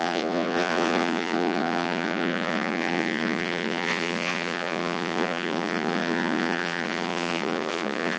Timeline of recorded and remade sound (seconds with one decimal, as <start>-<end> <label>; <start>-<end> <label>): 0.0-8.2 remade